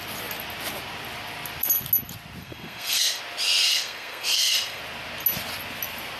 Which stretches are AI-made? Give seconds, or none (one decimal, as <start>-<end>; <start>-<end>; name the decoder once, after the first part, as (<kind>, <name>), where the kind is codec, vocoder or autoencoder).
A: 2.4-3.2 (codec, SNAC); 3.7-4.8